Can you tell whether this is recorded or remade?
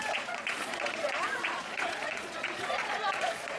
remade